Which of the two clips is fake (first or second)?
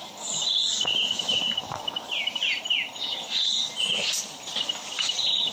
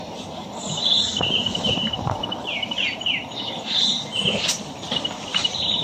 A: second